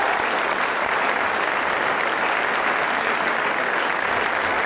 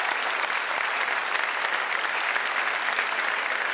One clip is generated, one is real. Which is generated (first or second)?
second